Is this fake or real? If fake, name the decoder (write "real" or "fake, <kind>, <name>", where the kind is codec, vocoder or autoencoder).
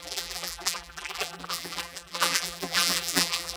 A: fake, vocoder, BigVGAN v2